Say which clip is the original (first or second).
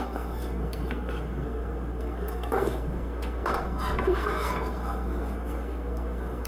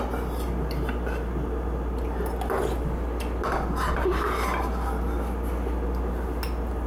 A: second